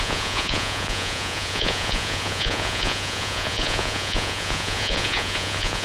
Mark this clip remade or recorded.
remade